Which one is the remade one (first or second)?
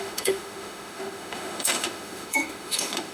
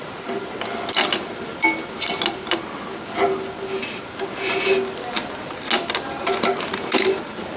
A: first